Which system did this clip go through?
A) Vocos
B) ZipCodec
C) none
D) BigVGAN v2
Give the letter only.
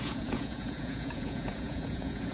A